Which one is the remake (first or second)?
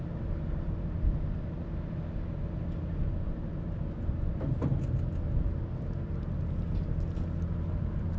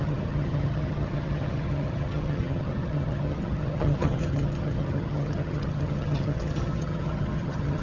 second